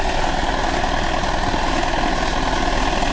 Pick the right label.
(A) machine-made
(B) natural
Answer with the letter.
B